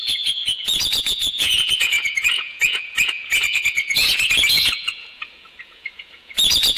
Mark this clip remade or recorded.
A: remade